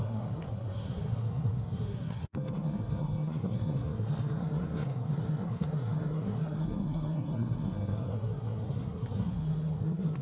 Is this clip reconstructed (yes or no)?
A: yes